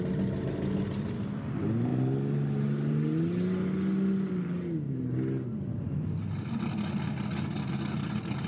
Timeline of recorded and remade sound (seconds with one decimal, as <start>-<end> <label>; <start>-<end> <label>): 0.0-8.5 recorded